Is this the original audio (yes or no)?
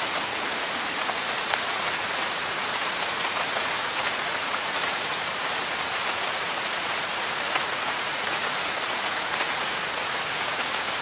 no